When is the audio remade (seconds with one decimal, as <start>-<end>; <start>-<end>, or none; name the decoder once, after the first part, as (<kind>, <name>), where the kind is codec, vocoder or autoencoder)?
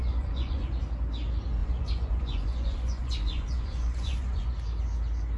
0.0-0.8 (vocoder, Vocos); 1.6-4.5